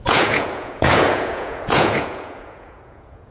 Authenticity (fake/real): fake